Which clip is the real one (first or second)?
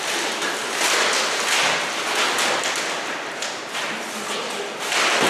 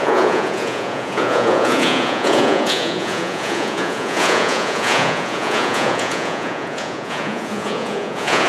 first